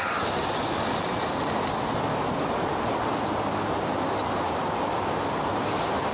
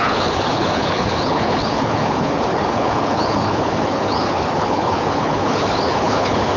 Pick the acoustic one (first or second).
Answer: first